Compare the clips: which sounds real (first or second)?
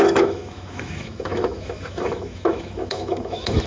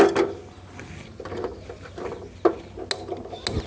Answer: second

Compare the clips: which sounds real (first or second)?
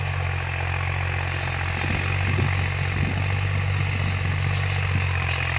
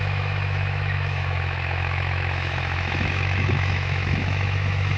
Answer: first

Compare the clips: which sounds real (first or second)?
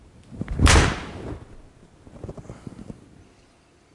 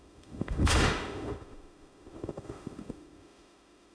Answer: first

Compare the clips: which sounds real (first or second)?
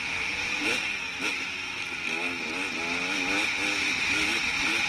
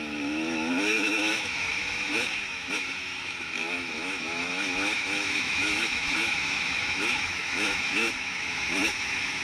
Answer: first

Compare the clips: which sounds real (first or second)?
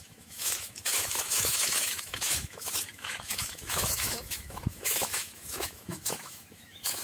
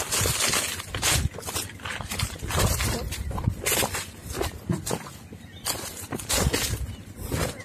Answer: second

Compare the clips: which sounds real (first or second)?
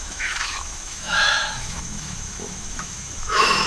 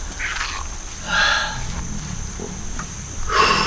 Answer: second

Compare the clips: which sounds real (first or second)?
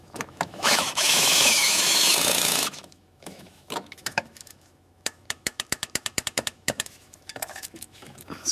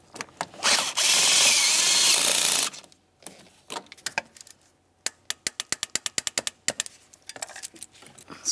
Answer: second